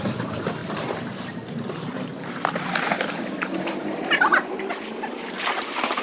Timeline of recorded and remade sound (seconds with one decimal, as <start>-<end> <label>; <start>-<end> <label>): 0.0-0.6 remade; 0.6-1.2 recorded; 1.2-2.1 remade; 2.1-3.4 recorded; 3.4-4.3 remade; 4.3-5.1 recorded; 5.1-6.0 remade